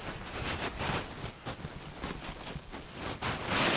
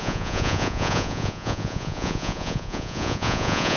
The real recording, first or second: first